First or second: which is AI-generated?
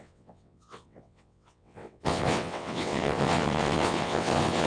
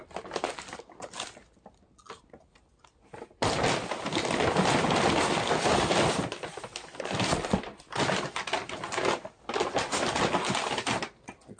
first